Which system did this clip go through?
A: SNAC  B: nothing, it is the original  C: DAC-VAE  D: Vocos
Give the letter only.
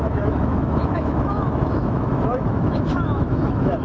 C